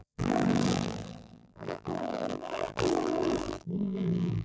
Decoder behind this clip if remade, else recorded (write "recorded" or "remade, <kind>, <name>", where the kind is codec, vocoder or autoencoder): remade, vocoder, BigVGAN v2